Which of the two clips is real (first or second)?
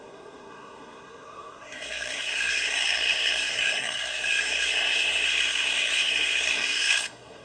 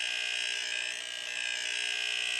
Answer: second